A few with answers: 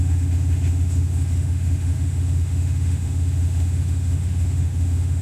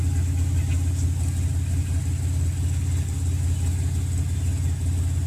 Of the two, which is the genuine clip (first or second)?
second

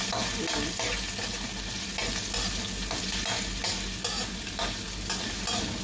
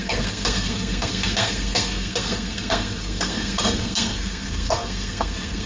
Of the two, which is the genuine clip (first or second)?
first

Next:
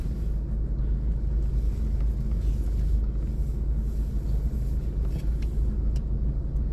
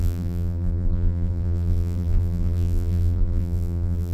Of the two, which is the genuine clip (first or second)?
first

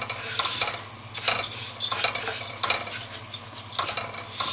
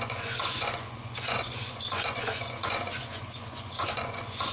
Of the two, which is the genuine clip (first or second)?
first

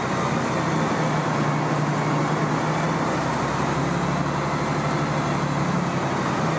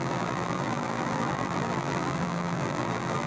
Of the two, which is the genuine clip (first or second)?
first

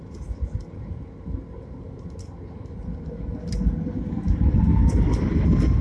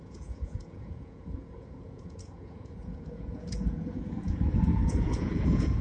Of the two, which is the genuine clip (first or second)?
first